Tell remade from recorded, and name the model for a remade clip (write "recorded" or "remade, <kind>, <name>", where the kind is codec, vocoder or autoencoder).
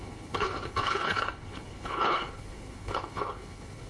remade, codec, HILCodec